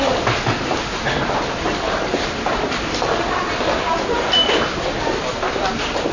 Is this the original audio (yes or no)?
yes